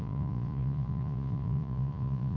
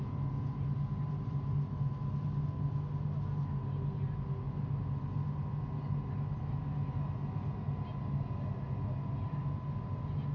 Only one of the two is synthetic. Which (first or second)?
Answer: first